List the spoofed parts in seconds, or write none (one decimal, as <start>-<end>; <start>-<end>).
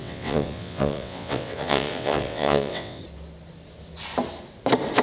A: 0.0-3.0